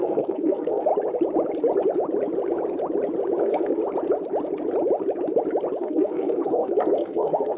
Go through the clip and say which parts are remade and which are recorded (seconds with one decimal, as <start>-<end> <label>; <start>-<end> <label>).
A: 0.0-0.9 remade; 0.9-3.4 recorded; 3.4-3.8 remade; 3.8-5.8 recorded; 5.8-7.6 remade